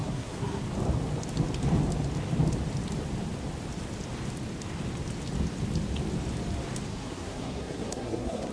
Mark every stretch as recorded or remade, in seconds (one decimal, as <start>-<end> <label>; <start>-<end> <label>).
0.0-0.6 remade; 0.6-6.9 recorded; 6.9-8.5 remade